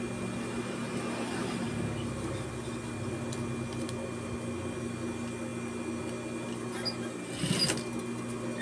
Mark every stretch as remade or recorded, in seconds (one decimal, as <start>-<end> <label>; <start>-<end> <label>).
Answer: 0.0-8.6 recorded